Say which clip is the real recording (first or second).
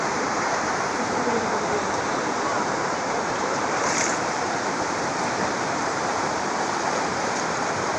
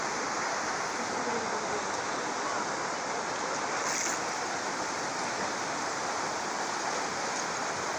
second